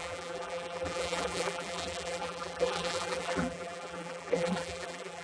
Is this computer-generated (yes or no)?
yes